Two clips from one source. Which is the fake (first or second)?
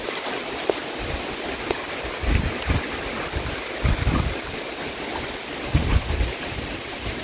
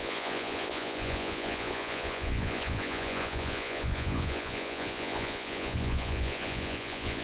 second